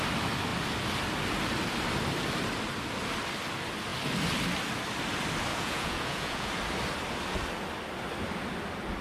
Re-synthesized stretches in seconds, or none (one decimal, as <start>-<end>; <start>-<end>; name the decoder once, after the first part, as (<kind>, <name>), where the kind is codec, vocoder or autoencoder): 5.5-6.5 (vocoder, Vocos)